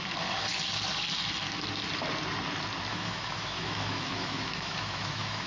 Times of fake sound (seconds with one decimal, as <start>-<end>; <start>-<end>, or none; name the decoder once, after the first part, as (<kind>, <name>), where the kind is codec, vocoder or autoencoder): 2.9-5.5 (autoencoder, DAC-VAE)